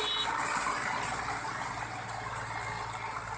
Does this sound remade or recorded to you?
recorded